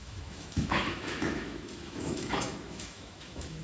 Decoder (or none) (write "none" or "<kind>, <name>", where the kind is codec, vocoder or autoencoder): autoencoder, DAC-VAE